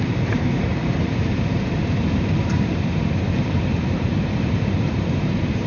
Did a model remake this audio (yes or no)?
yes